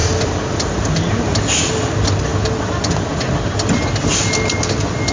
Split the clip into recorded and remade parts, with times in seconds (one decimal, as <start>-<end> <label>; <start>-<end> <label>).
0.0-1.7 remade; 1.7-2.3 recorded; 2.3-4.3 remade; 4.3-5.1 recorded